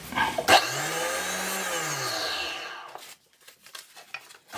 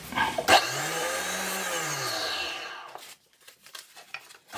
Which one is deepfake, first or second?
second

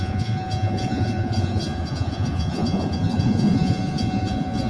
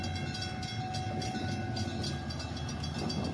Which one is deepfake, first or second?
first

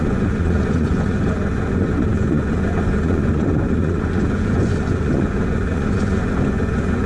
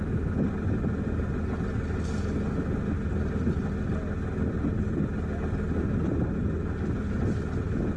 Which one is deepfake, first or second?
first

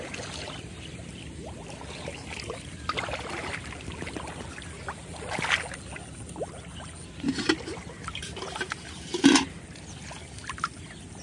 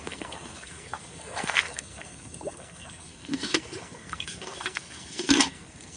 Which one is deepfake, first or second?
second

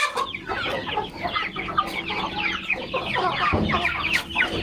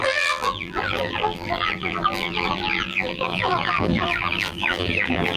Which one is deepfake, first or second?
second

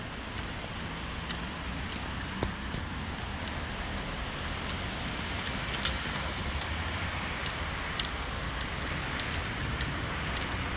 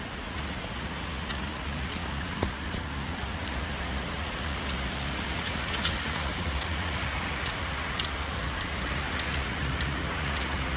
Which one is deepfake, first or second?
second